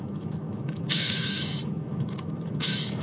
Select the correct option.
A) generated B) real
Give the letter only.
A